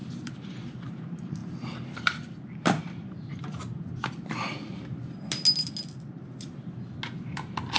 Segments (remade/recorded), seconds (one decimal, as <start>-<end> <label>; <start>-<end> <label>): 0.0-0.6 remade; 0.6-1.4 recorded; 1.4-5.2 remade; 5.2-7.8 recorded